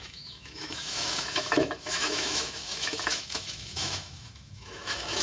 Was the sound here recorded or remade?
remade